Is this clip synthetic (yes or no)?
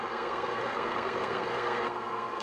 yes